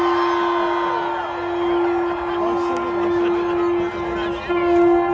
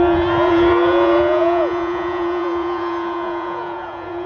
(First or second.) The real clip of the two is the first